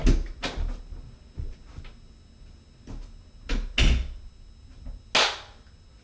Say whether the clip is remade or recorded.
recorded